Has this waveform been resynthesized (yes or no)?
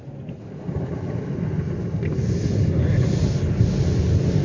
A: no